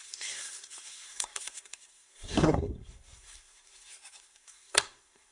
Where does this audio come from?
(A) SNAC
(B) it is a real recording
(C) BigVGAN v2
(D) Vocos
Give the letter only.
A